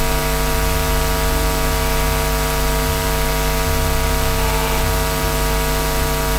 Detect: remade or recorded recorded